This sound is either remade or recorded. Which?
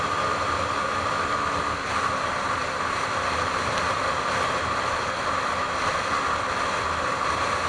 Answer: recorded